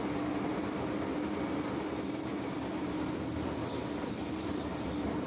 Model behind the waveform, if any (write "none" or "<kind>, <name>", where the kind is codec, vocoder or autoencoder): none